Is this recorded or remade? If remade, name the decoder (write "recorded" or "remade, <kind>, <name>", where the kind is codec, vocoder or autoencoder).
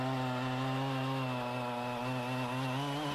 recorded